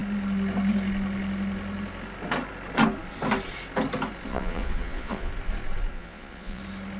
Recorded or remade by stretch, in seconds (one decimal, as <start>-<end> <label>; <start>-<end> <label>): 0.0-4.3 recorded; 4.3-5.3 remade; 5.3-5.9 recorded; 5.9-6.6 remade; 6.6-7.0 recorded